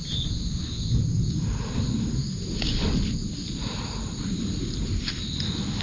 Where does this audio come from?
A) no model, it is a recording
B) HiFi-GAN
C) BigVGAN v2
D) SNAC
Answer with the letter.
A